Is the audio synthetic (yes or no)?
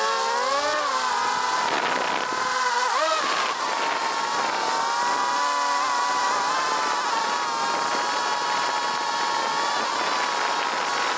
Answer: no